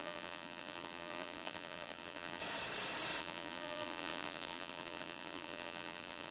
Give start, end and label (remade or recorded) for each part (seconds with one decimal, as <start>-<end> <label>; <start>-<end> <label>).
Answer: 0.0-2.4 remade; 2.4-3.2 recorded; 3.2-6.3 remade